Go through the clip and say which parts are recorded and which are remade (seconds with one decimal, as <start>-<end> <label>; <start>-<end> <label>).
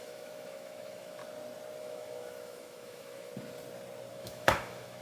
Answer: 0.0-1.2 remade; 1.2-1.8 recorded; 1.8-3.3 remade; 3.3-4.1 recorded; 4.1-5.0 remade